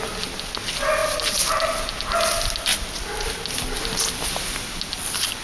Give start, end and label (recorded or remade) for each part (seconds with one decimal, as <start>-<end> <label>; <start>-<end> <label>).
0.0-5.4 recorded